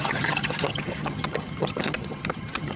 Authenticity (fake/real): fake